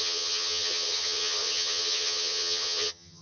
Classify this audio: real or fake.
fake